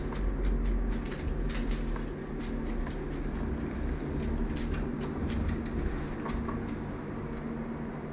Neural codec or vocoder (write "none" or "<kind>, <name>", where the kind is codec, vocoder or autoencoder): none